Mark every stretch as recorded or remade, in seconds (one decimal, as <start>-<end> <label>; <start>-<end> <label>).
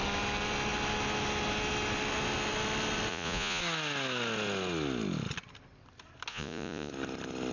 0.0-3.1 recorded; 3.1-3.6 remade; 3.6-6.3 recorded; 6.3-6.9 remade; 6.9-7.5 recorded